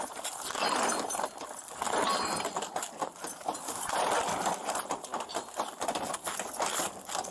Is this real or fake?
real